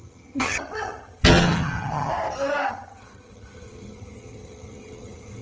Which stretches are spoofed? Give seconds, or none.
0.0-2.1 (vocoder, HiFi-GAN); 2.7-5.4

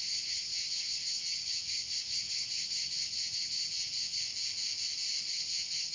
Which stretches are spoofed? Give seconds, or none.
0.0-4.3 (vocoder, HiFi-GAN); 5.3-5.9